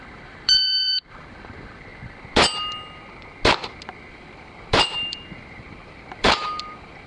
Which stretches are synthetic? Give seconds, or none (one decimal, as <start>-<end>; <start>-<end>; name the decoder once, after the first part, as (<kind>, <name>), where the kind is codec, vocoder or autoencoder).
0.0-1.9 (vocoder, BigVGAN v2); 4.1-7.1